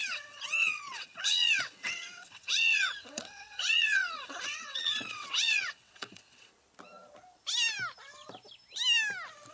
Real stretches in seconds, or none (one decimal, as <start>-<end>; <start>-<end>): 6.5-9.5